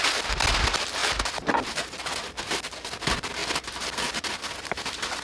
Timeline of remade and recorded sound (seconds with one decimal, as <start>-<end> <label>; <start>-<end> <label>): 0.0-5.2 recorded